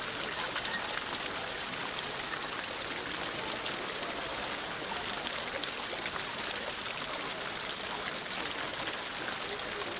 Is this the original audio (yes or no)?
yes